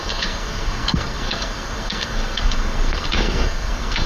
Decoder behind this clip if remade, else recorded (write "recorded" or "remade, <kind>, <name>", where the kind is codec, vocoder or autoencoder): remade, codec, SNAC